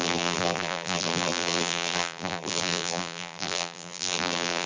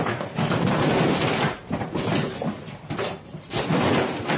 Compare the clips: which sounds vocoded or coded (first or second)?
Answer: first